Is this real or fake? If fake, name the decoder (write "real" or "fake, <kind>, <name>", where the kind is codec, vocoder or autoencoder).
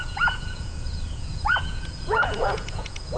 fake, vocoder, Vocos